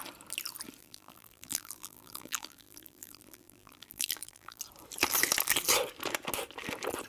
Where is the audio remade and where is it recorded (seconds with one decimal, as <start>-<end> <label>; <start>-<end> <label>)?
0.0-0.8 recorded; 0.8-4.6 remade; 4.6-7.1 recorded